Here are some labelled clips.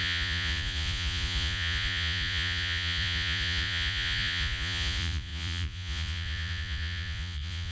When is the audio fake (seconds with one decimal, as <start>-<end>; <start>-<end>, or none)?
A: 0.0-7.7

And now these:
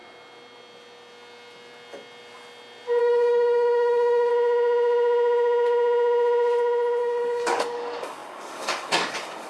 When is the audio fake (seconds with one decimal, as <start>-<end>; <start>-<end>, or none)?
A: 3.0-4.3; 7.0-9.5

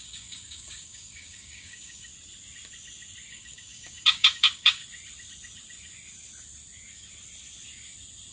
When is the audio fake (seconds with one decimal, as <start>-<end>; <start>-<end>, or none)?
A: 0.0-2.1; 3.3-4.8